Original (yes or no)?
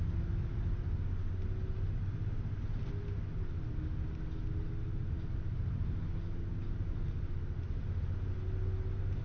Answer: yes